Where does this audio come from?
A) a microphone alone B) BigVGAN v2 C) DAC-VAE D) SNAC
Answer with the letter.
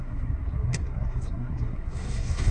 D